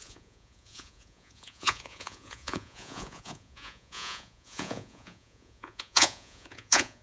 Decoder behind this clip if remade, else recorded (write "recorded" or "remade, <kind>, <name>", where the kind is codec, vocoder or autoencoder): remade, vocoder, Vocos